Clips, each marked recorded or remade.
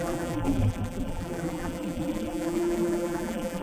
remade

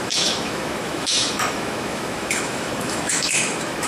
remade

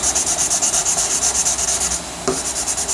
recorded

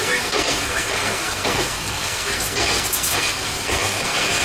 remade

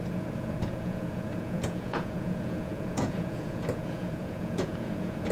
remade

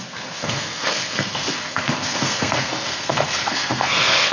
remade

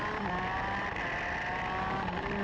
recorded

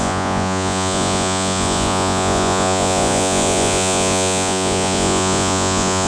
remade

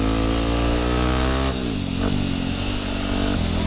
recorded